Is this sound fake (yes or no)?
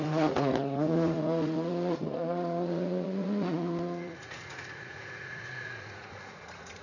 yes